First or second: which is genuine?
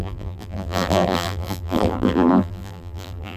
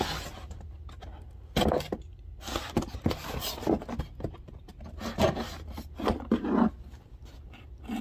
second